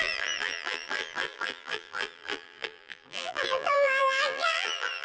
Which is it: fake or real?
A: fake